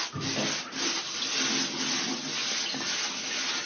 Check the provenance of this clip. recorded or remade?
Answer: recorded